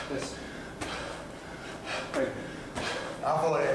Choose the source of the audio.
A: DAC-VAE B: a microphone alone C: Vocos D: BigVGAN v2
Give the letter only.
B